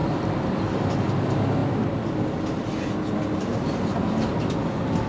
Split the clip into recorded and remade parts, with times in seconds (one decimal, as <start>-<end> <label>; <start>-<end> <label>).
0.0-1.2 remade; 1.2-5.1 recorded